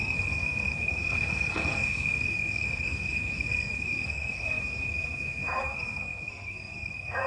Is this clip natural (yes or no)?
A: no